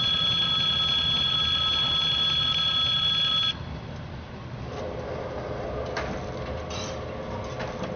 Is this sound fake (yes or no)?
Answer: no